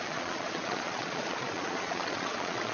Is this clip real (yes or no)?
no